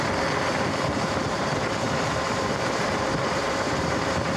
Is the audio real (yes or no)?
no